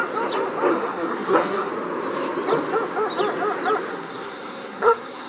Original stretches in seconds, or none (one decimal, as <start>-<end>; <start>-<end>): 0.0-0.7; 1.7-3.9